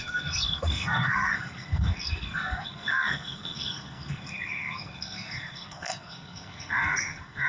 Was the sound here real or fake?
fake